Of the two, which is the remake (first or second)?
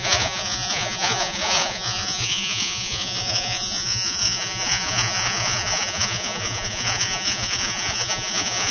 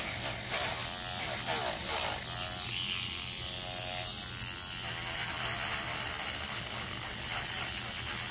first